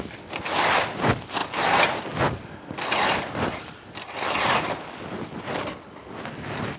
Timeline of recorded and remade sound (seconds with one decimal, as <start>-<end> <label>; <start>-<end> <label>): 0.0-6.8 recorded